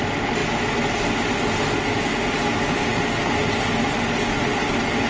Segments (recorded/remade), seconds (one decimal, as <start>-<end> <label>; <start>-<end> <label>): 0.0-5.1 recorded